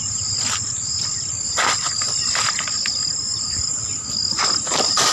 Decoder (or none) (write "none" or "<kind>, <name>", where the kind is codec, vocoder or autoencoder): none